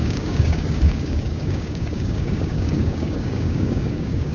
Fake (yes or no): yes